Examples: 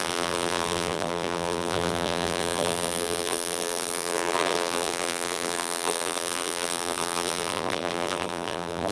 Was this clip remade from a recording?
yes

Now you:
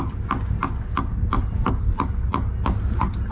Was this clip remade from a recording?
no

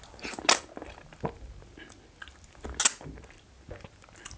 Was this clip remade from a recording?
no